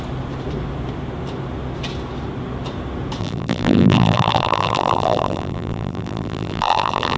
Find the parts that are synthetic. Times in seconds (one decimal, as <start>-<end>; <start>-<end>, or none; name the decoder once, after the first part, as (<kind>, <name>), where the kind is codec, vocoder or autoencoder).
3.2-7.2 (vocoder, BigVGAN v2)